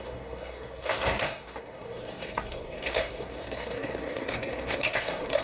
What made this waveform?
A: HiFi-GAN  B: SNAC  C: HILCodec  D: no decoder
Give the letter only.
B